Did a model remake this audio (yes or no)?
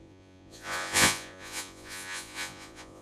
yes